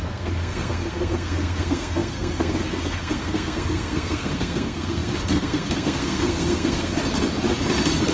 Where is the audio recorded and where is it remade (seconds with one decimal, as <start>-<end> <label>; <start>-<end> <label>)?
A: 0.0-6.9 remade; 6.9-8.1 recorded